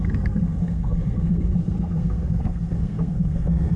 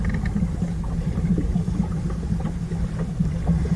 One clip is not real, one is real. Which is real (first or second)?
second